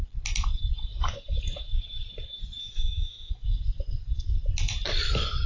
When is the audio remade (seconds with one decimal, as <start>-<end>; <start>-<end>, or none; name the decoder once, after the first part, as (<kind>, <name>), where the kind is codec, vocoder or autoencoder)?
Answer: 2.6-3.3 (autoencoder, DAC-VAE)